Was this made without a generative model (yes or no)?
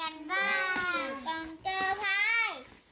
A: yes